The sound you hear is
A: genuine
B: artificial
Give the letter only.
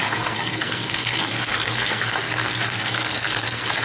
B